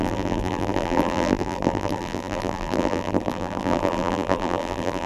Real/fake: fake